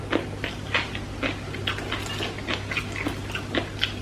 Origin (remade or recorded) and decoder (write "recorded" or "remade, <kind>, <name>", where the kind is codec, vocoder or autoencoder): recorded